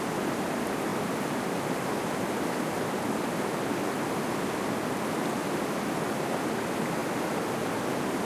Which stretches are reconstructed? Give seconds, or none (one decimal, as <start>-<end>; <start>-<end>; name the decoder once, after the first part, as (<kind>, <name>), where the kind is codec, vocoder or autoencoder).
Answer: none